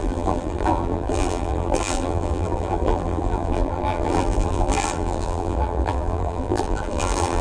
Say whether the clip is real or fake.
fake